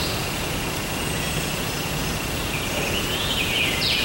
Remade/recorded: remade